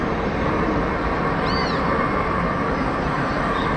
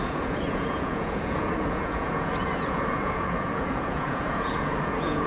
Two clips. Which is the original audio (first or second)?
first